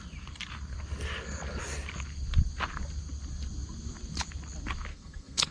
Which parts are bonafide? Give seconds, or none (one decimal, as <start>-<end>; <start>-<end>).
0.0-4.9